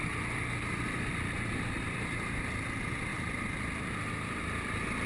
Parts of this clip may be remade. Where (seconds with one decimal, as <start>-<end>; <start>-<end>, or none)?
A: 0.0-3.1